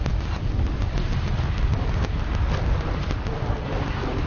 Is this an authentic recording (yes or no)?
yes